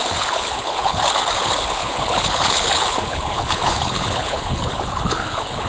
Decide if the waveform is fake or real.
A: fake